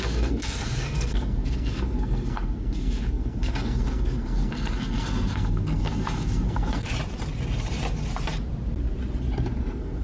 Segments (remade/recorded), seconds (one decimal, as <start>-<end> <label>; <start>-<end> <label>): 0.0-6.9 remade; 6.9-9.6 recorded; 9.6-10.0 remade